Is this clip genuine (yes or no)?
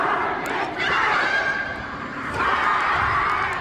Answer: no